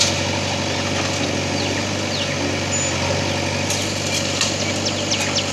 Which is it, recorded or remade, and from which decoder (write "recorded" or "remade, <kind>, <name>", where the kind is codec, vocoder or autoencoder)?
recorded